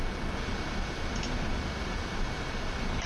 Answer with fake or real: real